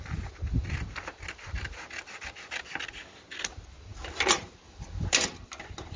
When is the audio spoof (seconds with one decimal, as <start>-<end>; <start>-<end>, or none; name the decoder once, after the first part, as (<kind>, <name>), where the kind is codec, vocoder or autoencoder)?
none